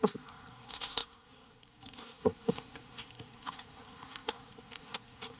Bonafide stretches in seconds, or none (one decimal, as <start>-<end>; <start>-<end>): none